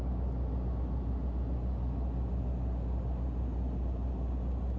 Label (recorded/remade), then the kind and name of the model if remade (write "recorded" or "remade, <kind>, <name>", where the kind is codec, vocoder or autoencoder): recorded